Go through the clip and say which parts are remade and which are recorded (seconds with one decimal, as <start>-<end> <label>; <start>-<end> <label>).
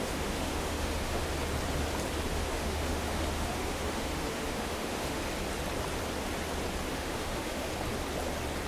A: 0.0-1.2 remade; 1.2-2.3 recorded; 2.3-5.2 remade; 5.2-6.9 recorded; 6.9-7.7 remade; 7.7-8.7 recorded